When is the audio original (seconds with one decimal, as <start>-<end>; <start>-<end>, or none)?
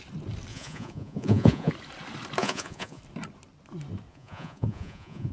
0.0-0.5; 1.7-2.4; 3.0-4.1